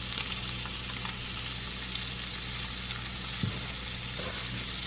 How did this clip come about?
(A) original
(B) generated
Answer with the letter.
A